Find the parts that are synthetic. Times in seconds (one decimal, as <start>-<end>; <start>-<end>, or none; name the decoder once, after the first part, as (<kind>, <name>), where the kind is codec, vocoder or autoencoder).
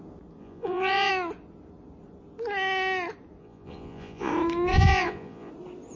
0.4-1.1 (vocoder, Vocos); 3.4-4.3; 4.7-5.5